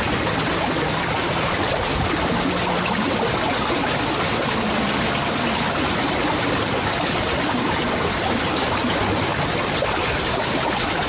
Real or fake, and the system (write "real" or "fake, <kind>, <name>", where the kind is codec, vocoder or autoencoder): real